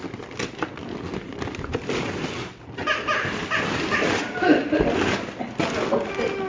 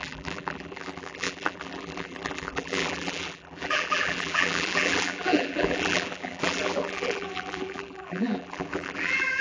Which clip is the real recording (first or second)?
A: first